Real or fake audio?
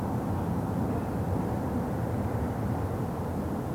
real